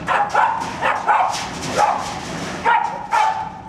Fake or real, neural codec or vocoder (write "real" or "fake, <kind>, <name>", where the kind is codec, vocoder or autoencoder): real